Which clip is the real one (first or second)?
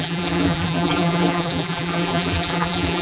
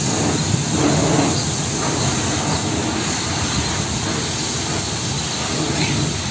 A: second